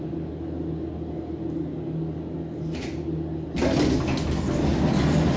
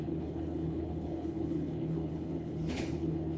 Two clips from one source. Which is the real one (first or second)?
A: first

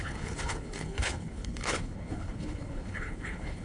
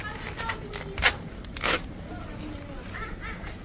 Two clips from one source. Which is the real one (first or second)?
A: second